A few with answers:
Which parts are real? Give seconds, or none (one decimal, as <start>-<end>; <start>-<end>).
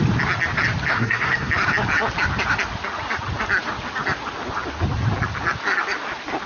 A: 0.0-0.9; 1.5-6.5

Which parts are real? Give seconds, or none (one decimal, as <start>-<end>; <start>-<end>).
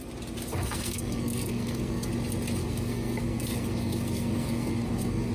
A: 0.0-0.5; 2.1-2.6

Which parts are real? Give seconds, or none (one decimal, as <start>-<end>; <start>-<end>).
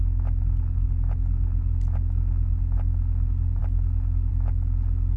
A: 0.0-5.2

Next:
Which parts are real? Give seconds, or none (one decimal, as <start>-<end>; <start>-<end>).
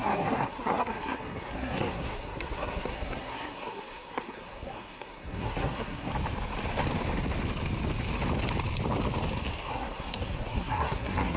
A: 6.1-9.7